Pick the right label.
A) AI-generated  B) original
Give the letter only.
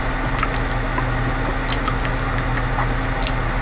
B